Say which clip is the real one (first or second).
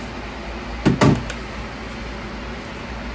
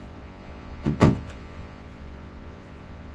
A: first